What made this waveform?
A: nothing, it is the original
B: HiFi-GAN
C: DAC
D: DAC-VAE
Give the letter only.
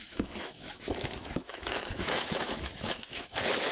D